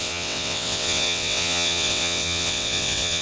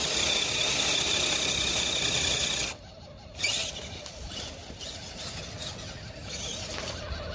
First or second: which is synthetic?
first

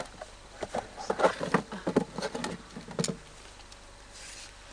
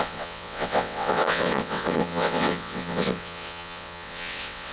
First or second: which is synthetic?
second